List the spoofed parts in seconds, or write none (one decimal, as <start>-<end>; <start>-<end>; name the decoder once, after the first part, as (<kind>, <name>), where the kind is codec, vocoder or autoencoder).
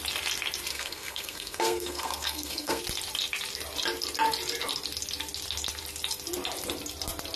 0.7-2.8 (codec, SNAC)